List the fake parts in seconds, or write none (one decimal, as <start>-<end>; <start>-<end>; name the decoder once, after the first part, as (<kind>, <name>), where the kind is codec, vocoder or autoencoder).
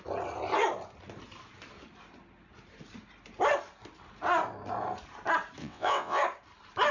5.6-6.2 (vocoder, WaveNeXt)